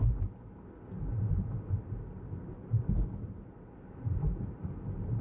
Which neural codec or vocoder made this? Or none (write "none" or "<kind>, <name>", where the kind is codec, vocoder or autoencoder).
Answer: none